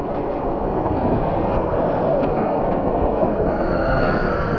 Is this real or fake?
fake